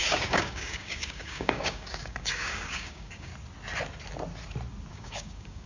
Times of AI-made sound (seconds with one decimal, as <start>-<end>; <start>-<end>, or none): 0.0-3.3; 4.9-5.7